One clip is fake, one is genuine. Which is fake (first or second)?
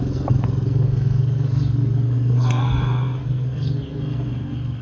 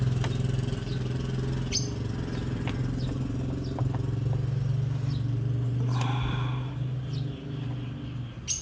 first